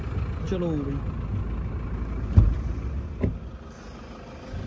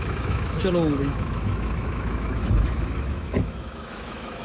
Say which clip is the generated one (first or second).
second